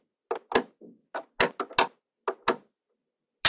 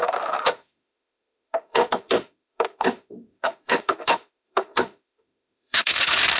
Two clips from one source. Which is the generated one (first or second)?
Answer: second